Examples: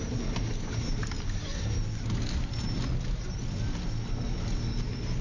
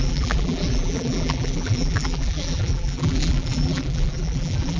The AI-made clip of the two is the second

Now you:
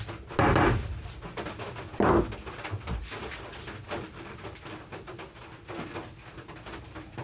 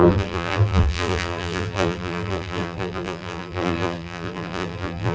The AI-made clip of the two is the second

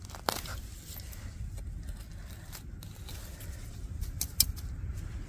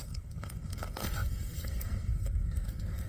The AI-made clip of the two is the second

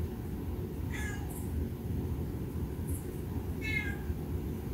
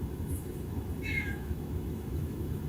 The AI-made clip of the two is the second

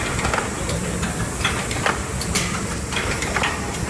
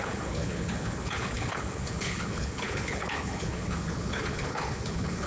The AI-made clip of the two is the second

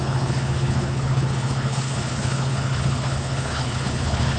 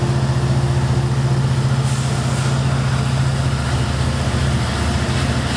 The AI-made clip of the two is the first